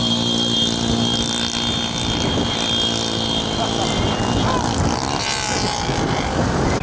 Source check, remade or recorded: recorded